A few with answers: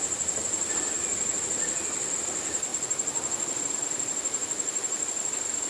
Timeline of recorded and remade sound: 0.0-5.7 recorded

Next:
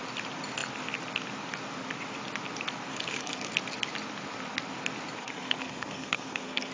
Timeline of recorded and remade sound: 0.0-2.9 recorded; 2.9-3.5 remade; 3.5-5.2 recorded; 5.2-6.7 remade

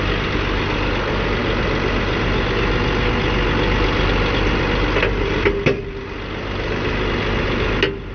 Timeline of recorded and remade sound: 0.0-8.1 recorded

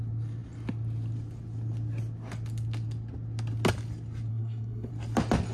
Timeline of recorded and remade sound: 0.0-4.3 recorded; 4.3-4.9 remade; 4.9-5.5 recorded